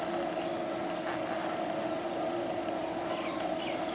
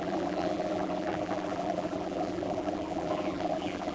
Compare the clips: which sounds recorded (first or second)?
first